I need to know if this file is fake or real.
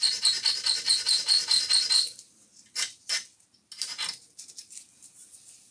real